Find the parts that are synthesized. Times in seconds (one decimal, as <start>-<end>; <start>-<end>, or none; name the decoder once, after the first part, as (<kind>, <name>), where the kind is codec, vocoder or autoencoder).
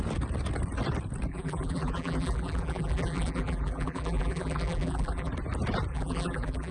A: 1.3-5.3 (vocoder, BigVGAN v2); 5.9-6.7